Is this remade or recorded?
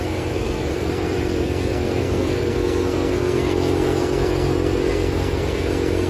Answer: remade